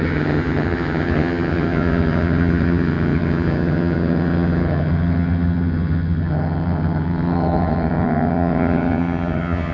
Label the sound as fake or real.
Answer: fake